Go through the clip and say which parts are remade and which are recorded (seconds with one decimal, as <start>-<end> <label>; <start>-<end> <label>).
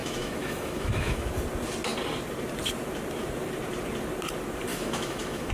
0.0-1.3 remade; 1.3-4.7 recorded; 4.7-5.5 remade